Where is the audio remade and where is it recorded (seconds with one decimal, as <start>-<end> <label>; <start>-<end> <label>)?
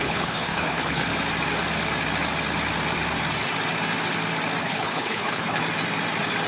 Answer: 0.0-1.1 remade; 1.1-4.6 recorded; 4.6-5.6 remade; 5.6-6.5 recorded